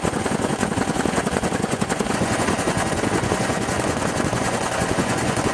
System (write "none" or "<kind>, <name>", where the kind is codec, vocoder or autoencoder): vocoder, Vocos